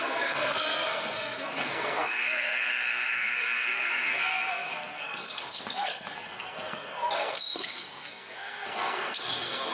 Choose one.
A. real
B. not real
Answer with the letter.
B